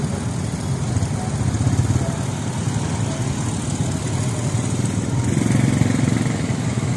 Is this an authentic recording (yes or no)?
yes